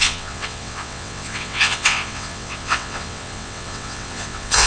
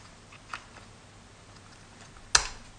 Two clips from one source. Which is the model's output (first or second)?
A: first